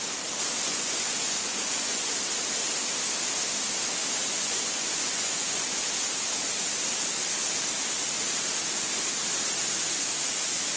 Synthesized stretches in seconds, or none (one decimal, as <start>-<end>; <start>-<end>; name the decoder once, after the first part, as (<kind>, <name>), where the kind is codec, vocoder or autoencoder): 0.7-2.1 (vocoder, Vocos); 4.2-5.8